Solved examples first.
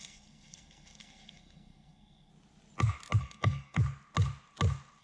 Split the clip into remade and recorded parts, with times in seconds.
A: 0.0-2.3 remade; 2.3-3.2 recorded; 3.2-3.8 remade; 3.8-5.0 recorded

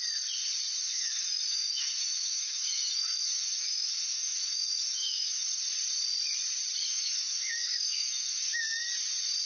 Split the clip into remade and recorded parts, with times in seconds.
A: 0.0-0.8 recorded; 0.8-5.6 remade; 5.6-6.9 recorded; 6.9-8.9 remade; 8.9-9.5 recorded

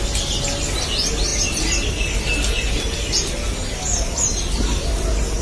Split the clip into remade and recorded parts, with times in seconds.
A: 0.0-1.3 recorded; 1.3-2.7 remade; 2.7-5.4 recorded

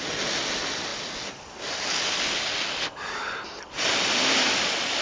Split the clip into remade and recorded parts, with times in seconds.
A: 0.0-5.0 recorded

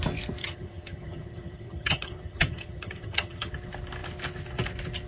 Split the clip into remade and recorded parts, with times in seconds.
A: 0.0-0.4 recorded; 0.4-3.5 remade; 3.5-5.1 recorded

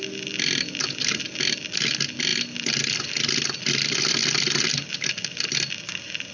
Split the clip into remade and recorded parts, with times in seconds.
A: 0.0-6.3 recorded